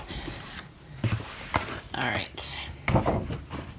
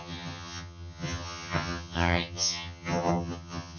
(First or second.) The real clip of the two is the first